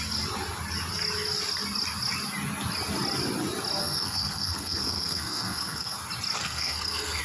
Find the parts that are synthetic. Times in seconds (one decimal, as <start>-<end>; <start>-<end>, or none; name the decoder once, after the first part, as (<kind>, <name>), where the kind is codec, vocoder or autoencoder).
3.8-6.0 (codec, SNAC); 6.4-7.2